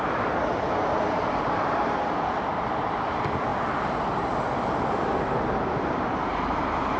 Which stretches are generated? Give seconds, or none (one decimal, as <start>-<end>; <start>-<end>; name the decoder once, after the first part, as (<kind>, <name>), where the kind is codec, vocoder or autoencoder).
none